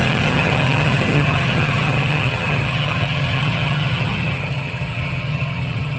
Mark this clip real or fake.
fake